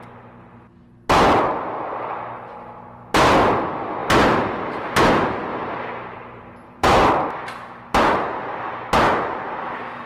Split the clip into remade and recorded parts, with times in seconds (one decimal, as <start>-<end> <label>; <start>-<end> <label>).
0.0-4.0 recorded; 4.0-5.0 remade; 5.0-5.5 recorded; 5.5-7.1 remade; 7.1-10.1 recorded